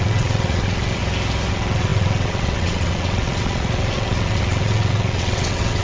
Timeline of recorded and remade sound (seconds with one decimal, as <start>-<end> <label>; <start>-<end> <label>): 0.0-1.0 remade; 1.0-1.5 recorded; 1.5-5.8 remade